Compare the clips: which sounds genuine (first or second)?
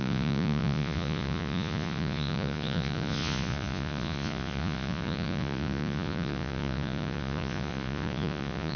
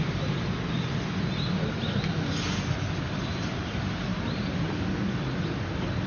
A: second